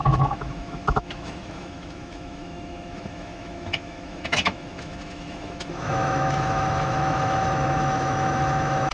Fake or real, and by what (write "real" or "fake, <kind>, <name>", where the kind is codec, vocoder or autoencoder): fake, autoencoder, DAC-VAE